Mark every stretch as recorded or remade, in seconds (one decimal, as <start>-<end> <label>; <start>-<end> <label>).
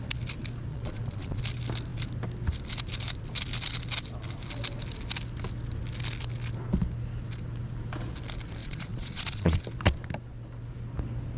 0.0-0.7 recorded; 0.7-1.4 remade; 1.4-8.6 recorded; 8.6-9.6 remade; 9.6-11.4 recorded